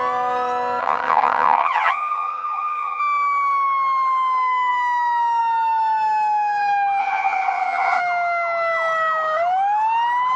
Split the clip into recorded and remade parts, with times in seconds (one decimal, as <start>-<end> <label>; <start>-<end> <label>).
0.0-0.8 recorded; 0.8-3.0 remade; 3.0-7.0 recorded; 7.0-8.0 remade; 8.0-10.4 recorded